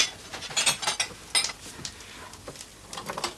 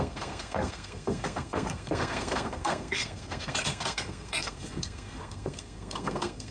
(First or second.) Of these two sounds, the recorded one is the first